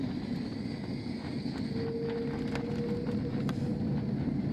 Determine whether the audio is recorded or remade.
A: recorded